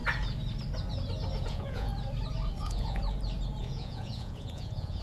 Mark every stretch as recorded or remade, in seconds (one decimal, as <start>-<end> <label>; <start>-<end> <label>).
0.0-1.4 recorded; 1.4-1.9 remade; 1.9-2.6 recorded; 2.6-3.0 remade; 3.0-3.6 recorded; 3.6-5.0 remade